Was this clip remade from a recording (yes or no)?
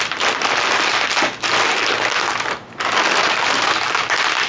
no